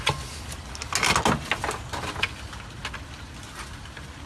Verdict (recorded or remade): recorded